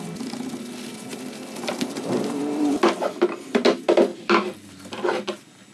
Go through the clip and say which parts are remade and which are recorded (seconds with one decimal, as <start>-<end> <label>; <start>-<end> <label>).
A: 0.0-1.1 recorded; 1.1-3.5 remade; 3.5-4.1 recorded; 4.1-5.1 remade; 5.1-5.7 recorded